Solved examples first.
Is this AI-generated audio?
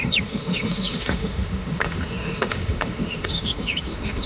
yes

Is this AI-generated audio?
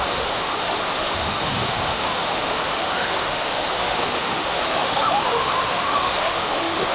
yes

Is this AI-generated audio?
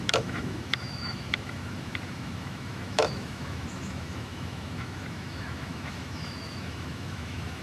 yes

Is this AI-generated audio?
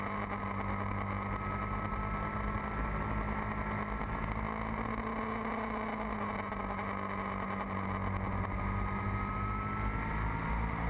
no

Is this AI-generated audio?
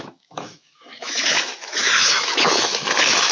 yes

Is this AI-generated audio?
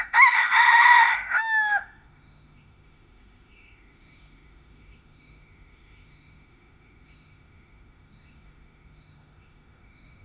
yes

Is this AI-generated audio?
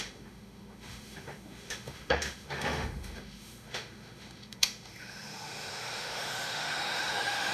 yes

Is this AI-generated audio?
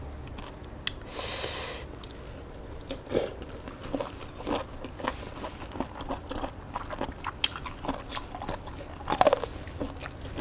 no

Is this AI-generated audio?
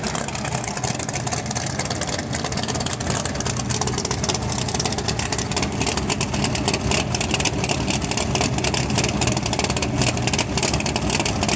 no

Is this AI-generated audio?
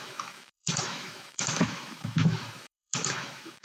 yes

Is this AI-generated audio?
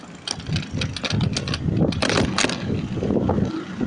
no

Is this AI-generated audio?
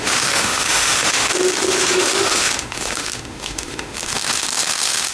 yes